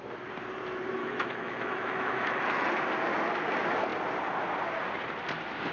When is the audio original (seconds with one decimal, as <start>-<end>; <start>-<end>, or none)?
0.0-1.0; 2.7-5.7